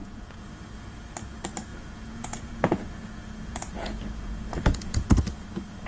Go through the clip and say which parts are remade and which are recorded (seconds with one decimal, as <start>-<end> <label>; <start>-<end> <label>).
0.0-0.5 remade; 0.5-1.7 recorded; 1.7-5.2 remade; 5.2-5.9 recorded